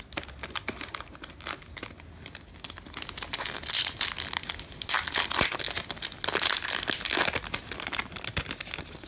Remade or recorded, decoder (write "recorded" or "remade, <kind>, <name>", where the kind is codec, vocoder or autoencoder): recorded